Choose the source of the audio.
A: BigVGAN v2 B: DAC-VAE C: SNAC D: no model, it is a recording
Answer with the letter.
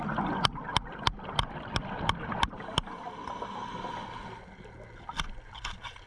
D